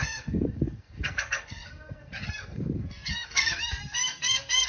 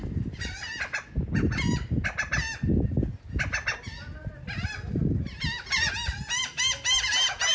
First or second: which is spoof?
first